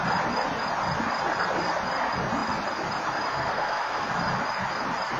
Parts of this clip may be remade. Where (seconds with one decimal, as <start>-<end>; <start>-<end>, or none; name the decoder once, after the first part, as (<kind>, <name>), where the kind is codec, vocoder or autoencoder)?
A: 3.3-4.1 (codec, SNAC)

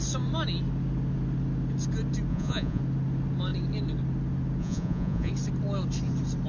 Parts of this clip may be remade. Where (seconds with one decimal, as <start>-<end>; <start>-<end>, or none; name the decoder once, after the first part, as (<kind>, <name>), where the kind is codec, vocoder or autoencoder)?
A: 2.3-2.8 (vocoder, Vocos); 4.6-5.3

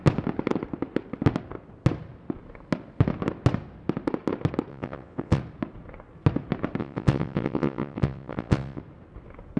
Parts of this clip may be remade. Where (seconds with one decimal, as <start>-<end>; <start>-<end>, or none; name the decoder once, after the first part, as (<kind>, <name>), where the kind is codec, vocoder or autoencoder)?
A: 4.7-5.4 (vocoder, WaveNeXt); 6.8-8.8

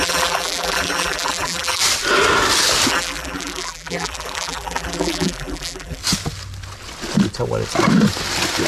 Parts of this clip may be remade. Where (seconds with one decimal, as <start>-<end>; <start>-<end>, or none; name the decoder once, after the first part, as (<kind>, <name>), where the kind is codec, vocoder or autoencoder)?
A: 0.0-1.8 (vocoder, BigVGAN v2); 2.9-6.0

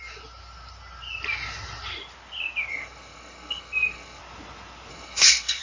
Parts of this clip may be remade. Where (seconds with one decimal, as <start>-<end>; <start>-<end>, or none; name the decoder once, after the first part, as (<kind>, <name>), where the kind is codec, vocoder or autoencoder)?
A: 2.7-4.2 (codec, SNAC); 4.9-5.6

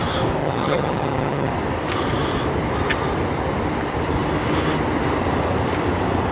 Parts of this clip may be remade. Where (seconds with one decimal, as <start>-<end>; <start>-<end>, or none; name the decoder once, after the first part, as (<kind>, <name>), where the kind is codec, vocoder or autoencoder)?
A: 0.4-1.5 (vocoder, HiFi-GAN)